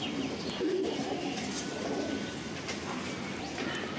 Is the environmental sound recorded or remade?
recorded